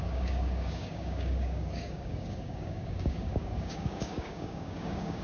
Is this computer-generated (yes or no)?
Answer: yes